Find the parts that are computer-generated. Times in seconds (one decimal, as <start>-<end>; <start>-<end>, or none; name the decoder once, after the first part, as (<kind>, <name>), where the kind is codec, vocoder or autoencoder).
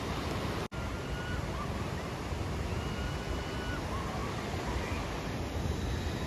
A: none